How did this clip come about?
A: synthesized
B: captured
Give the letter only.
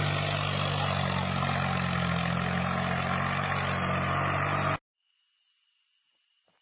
B